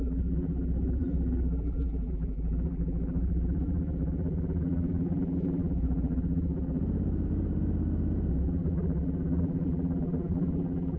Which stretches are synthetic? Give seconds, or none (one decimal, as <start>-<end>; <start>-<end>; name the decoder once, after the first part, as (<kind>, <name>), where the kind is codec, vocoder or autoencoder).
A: 0.0-6.8 (vocoder, BigVGAN v2); 8.3-11.0